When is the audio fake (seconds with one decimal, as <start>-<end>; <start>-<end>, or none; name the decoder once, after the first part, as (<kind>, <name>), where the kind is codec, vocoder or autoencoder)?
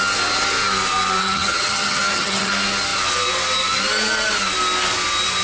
1.2-2.5 (vocoder, HiFi-GAN)